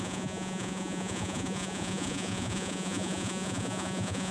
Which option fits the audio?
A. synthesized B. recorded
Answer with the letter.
A